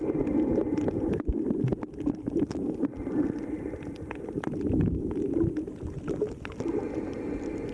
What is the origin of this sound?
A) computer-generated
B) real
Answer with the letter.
B